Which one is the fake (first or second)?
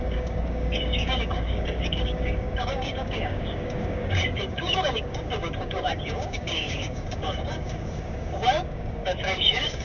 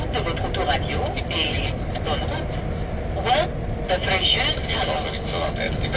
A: first